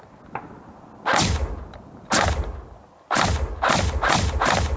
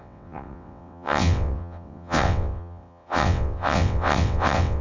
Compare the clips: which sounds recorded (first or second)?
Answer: first